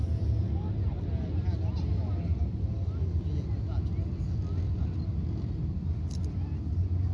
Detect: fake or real real